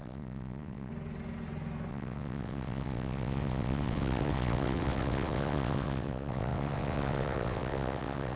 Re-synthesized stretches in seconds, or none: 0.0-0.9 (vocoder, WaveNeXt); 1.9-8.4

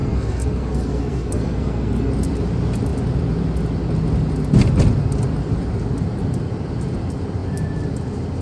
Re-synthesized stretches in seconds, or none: 0.0-2.1 (codec, SNAC)

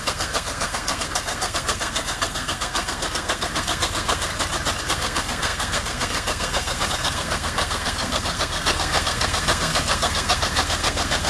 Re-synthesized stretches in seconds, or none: 0.0-4.3 (codec, SNAC); 4.8-11.3

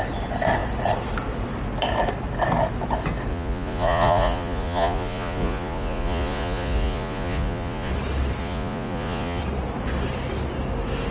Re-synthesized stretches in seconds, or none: 3.3-7.9 (vocoder, Vocos); 8.4-9.4

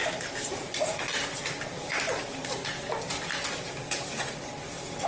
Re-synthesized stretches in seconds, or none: none